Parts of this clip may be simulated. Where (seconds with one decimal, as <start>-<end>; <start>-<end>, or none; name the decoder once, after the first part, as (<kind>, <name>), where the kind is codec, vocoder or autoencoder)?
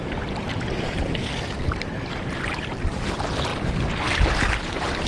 none